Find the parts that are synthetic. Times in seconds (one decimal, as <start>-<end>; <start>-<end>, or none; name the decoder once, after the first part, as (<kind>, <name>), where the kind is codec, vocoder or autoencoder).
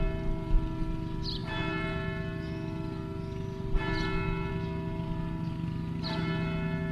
none